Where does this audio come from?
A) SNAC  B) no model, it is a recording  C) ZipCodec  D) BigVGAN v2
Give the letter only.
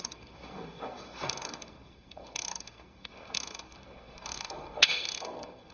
A